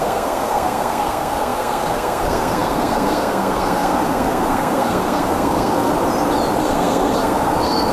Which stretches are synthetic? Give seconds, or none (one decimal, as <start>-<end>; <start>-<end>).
0.0-5.9; 6.6-7.9